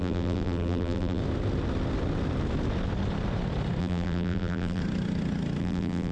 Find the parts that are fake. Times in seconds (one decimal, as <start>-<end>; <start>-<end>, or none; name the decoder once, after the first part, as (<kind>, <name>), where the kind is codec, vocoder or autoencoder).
0.0-1.2 (vocoder, BigVGAN v2); 3.8-4.8; 5.6-6.1